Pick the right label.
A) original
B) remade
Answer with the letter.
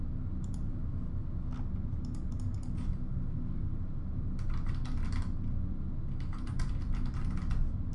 A